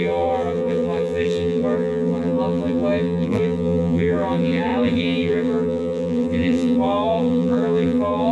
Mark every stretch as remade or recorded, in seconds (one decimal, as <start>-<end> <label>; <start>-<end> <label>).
0.0-8.3 remade